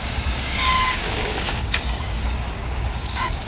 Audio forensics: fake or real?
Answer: fake